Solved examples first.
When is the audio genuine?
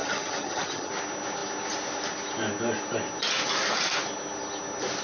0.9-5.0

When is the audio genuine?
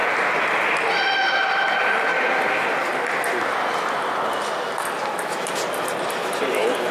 0.0-1.4; 2.1-6.1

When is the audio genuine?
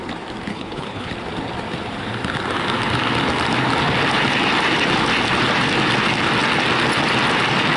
0.0-0.5; 1.1-7.8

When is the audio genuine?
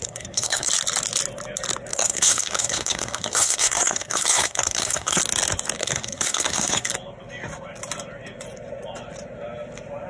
0.7-1.9; 5.2-5.8; 6.9-10.1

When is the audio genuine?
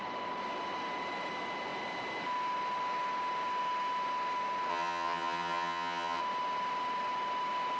0.0-4.7; 6.2-7.8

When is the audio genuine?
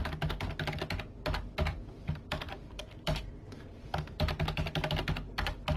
0.0-1.7; 3.8-5.8